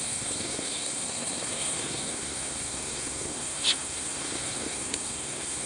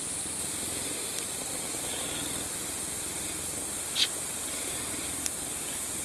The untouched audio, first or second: second